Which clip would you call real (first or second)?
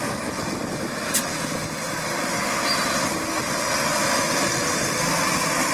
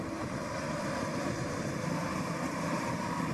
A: first